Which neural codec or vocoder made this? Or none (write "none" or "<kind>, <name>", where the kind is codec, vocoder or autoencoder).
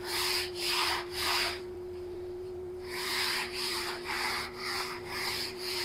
vocoder, BigVGAN v2